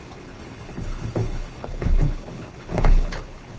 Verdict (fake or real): fake